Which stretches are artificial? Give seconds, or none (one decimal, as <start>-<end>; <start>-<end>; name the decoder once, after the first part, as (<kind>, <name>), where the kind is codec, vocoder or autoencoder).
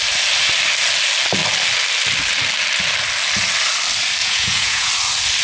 4.2-4.9 (vocoder, Vocos)